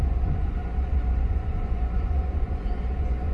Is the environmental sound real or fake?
fake